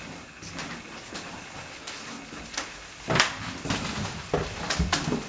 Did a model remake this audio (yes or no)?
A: no